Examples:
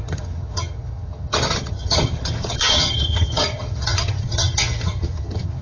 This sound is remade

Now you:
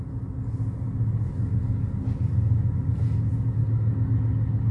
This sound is recorded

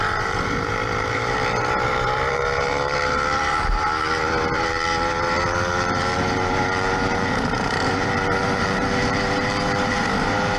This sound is remade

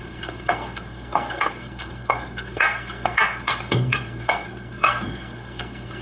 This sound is remade